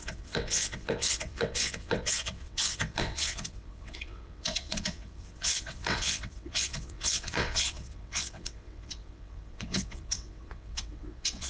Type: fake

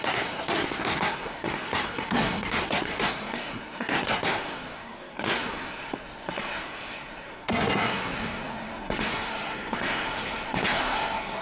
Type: fake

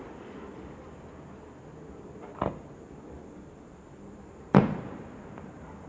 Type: real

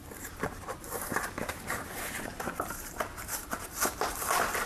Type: fake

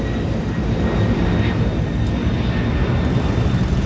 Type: real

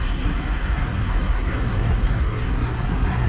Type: fake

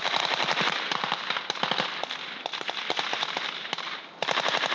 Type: real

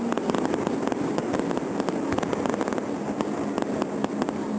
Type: real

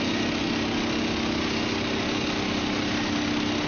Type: real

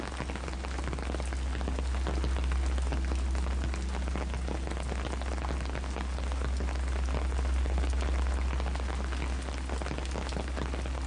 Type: real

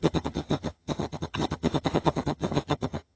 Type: fake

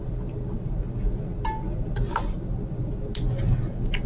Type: real